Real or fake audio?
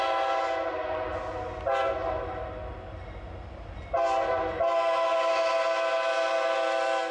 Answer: real